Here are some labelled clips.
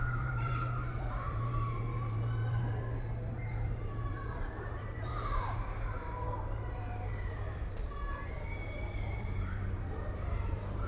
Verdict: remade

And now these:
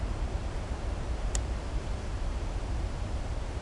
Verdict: remade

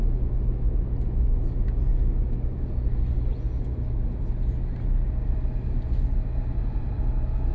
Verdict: recorded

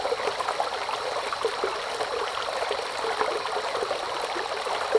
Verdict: recorded